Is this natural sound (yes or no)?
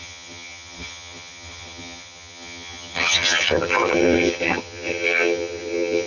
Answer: no